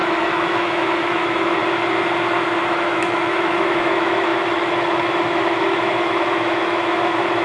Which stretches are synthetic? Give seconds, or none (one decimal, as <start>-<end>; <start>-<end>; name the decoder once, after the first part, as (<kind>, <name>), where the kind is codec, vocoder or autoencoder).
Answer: 0.0-1.6 (autoencoder, DAC-VAE); 2.6-7.4